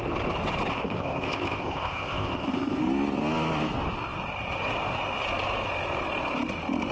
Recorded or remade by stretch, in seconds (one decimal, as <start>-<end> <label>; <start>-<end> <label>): 0.0-0.7 recorded; 0.7-2.8 remade; 2.8-6.9 recorded